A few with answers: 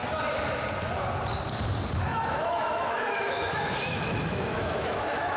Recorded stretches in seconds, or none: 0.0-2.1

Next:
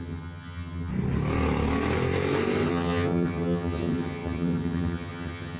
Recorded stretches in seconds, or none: 0.9-2.7

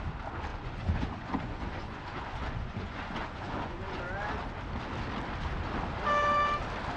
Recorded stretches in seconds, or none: 0.0-0.5; 4.0-7.0

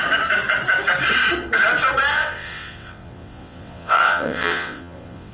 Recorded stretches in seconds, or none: 0.0-2.1

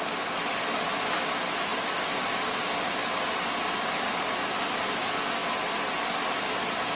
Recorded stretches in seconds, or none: 0.0-6.9

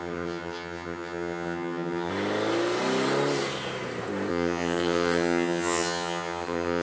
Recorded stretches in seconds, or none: 2.1-4.3

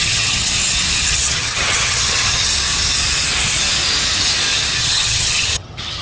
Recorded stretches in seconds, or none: 0.5-1.1; 2.5-4.8